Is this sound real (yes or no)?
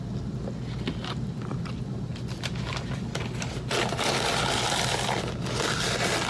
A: yes